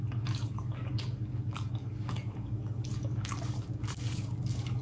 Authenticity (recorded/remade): remade